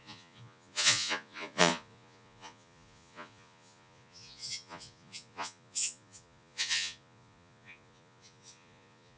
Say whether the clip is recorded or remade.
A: remade